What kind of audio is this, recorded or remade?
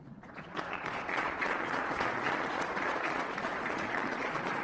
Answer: remade